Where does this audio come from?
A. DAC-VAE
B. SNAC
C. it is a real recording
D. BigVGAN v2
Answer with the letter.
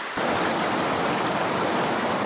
C